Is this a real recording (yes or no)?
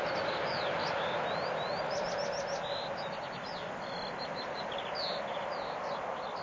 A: yes